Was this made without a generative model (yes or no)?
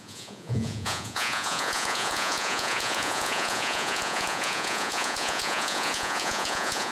no